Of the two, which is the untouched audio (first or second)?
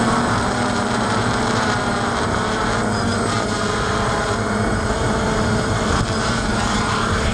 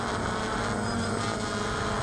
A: second